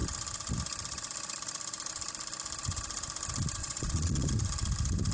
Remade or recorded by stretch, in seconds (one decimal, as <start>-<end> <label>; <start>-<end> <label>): 0.0-3.6 recorded; 3.6-4.3 remade; 4.3-5.1 recorded